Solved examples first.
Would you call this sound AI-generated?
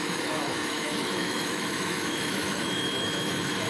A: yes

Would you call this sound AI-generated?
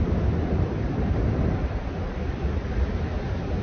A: no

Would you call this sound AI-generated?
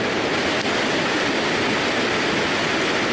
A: no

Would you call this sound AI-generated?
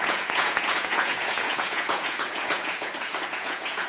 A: yes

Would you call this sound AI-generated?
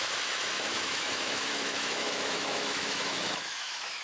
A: yes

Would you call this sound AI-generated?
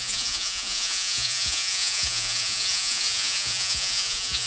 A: yes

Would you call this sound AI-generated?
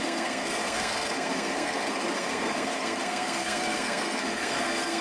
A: yes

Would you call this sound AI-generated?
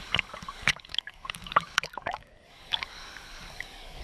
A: yes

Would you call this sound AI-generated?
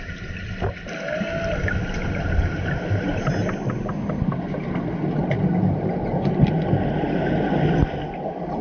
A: no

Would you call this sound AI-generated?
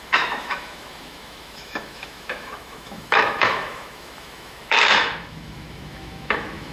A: yes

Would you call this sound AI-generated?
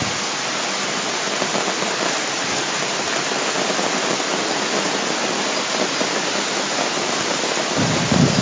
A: no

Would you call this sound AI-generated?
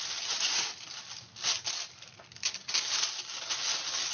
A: no